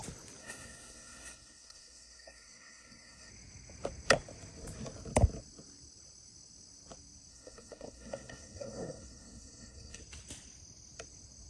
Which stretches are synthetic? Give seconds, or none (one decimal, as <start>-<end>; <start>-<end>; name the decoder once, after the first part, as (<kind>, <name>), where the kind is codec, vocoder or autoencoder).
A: 0.4-3.3 (codec, SNAC); 7.3-10.0